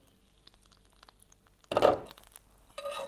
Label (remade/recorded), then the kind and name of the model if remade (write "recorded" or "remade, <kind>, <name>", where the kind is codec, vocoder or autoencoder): recorded